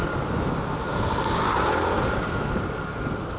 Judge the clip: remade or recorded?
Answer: recorded